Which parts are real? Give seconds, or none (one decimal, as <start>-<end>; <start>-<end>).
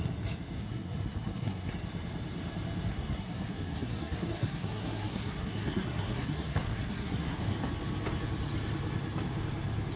0.0-0.6; 1.7-2.9; 7.4-10.0